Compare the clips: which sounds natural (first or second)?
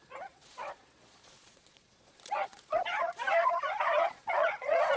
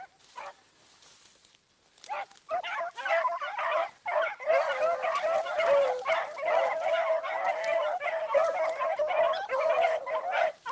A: second